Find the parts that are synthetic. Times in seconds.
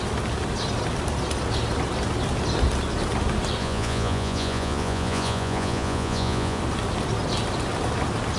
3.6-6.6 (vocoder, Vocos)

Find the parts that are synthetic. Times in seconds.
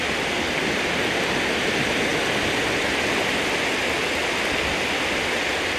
none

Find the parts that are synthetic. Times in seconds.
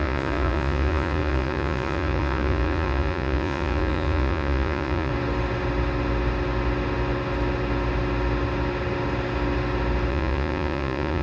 0.0-5.1 (vocoder, Vocos); 10.1-11.2